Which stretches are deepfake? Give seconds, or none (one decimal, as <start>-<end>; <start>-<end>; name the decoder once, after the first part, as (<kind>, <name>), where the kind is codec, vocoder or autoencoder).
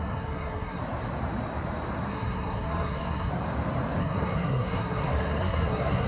0.0-0.8 (codec, SNAC); 2.1-3.3; 4.0-6.1